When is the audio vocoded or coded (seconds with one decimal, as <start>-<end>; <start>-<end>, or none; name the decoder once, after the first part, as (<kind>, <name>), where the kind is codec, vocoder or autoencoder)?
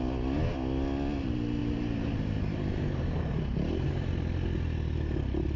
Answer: 1.6-4.1 (vocoder, BigVGAN v2)